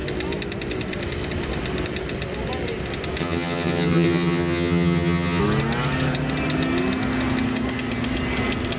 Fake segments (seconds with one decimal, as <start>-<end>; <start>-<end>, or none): 3.2-5.4